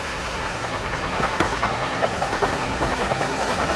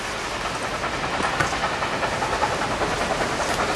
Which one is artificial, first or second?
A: first